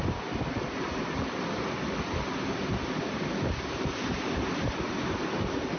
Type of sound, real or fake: real